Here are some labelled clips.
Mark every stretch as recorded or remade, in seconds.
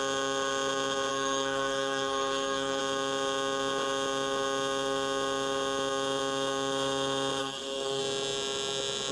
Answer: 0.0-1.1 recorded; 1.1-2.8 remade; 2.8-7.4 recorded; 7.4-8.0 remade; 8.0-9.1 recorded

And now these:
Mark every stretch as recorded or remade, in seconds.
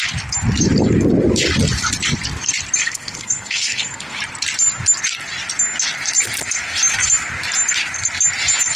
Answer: 0.0-2.8 recorded; 2.8-4.2 remade; 4.2-8.8 recorded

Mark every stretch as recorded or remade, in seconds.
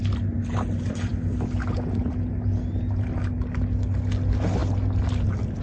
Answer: 0.0-5.6 recorded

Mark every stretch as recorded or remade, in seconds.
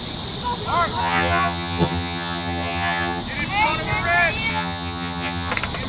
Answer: 0.0-1.0 recorded; 1.0-3.2 remade; 3.2-4.5 recorded; 4.5-5.5 remade; 5.5-5.9 recorded